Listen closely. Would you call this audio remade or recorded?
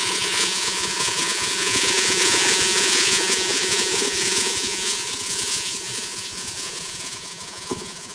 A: remade